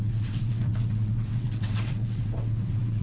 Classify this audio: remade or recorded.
remade